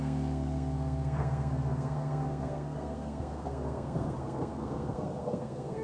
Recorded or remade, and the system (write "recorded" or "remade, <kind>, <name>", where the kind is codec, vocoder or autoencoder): remade, codec, SNAC